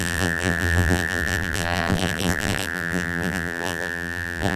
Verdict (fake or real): fake